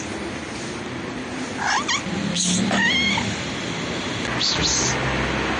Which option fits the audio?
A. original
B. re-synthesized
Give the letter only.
A